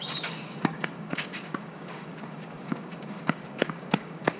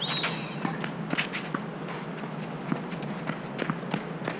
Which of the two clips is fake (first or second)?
first